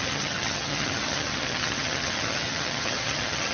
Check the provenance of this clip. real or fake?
fake